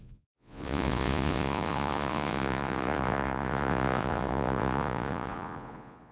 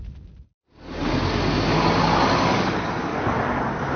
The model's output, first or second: first